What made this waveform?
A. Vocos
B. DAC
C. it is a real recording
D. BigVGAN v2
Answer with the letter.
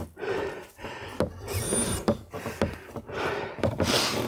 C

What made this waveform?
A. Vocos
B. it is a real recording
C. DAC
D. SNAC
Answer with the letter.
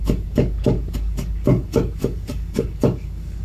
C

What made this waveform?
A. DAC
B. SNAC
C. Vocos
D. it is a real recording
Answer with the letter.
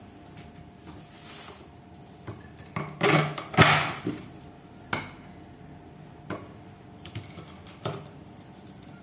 D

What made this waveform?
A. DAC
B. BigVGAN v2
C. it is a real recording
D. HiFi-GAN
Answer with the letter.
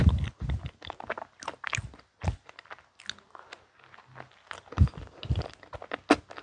C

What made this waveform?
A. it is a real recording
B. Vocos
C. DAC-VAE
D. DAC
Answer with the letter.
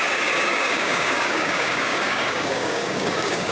D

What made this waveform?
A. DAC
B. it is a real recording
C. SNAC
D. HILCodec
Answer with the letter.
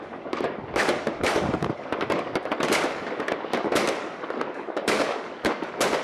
A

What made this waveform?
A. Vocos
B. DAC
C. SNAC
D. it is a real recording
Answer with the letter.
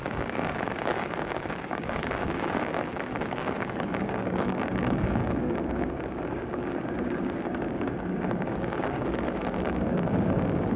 B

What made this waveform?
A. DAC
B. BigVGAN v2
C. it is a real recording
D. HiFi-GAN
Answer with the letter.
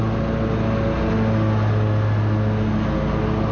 C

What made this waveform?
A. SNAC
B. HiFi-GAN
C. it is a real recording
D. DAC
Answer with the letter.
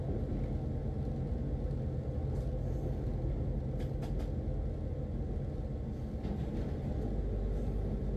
C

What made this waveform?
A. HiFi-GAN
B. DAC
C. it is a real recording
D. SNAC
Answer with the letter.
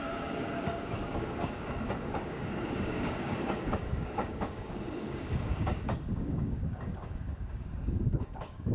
B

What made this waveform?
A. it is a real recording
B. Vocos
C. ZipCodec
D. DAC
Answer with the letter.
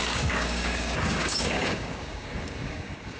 D